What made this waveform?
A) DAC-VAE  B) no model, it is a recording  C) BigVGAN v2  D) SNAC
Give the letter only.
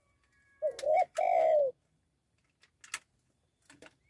B